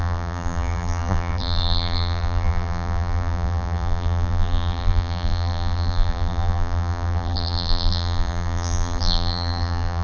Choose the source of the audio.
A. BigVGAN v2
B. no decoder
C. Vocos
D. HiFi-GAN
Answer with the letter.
A